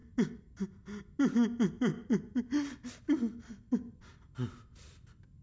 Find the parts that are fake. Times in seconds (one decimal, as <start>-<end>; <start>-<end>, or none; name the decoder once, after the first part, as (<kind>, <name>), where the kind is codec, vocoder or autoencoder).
none